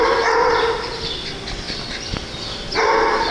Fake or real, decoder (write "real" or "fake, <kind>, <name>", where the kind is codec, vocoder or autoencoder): real